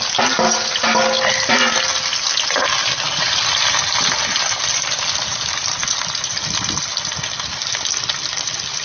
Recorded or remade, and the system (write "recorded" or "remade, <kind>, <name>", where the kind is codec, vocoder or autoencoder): recorded